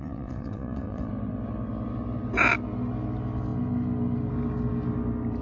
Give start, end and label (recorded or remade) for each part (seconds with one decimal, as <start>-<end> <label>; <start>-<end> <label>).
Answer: 0.0-1.1 remade; 1.1-5.4 recorded